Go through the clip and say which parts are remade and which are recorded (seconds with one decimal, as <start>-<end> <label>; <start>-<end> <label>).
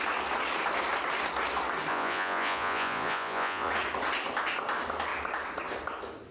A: 0.0-1.9 recorded; 1.9-3.7 remade; 3.7-6.3 recorded